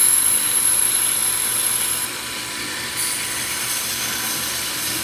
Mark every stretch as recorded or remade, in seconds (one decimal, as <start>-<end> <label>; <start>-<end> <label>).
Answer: 0.0-5.0 recorded